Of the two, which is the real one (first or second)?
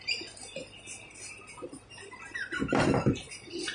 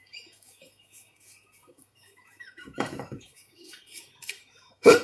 first